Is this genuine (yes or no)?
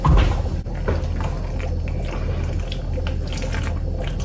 yes